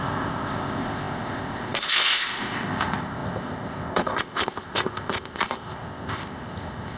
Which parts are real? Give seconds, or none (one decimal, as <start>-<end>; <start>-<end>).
none